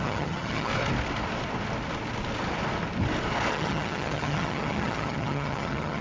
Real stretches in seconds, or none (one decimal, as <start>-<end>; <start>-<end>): 0.7-3.5